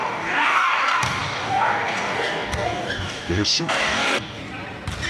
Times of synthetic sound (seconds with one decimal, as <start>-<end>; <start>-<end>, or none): 0.0-4.4